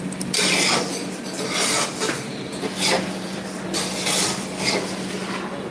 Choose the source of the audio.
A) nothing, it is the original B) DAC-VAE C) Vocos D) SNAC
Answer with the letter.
A